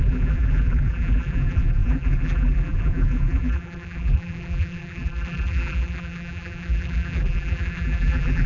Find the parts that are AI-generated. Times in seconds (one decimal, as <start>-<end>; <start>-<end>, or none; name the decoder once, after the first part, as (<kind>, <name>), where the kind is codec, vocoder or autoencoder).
0.0-8.5 (vocoder, BigVGAN v2)